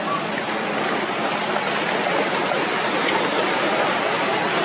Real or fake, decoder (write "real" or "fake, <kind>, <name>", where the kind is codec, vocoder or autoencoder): real